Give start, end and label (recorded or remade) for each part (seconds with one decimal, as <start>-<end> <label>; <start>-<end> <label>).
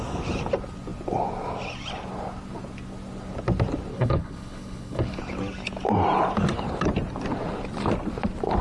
0.0-3.9 recorded; 3.9-5.2 remade; 5.2-8.6 recorded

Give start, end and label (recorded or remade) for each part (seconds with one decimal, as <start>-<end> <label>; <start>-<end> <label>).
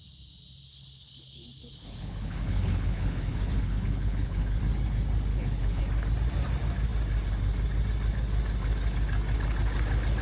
0.0-0.7 recorded; 0.7-4.6 remade; 4.6-5.3 recorded; 5.3-5.8 remade; 5.8-10.2 recorded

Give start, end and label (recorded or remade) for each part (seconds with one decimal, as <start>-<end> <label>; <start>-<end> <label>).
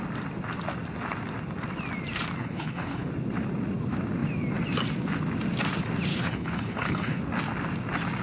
0.0-2.4 recorded; 2.4-3.1 remade; 3.1-6.1 recorded; 6.1-7.2 remade; 7.2-8.2 recorded